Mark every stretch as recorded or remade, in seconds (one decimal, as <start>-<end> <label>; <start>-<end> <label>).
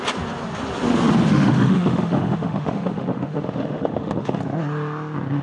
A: 0.0-1.3 recorded; 1.3-4.4 remade; 4.4-5.4 recorded